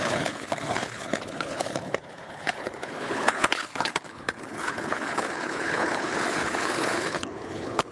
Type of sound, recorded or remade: remade